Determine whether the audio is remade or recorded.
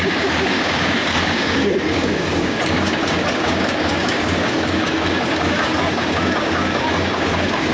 remade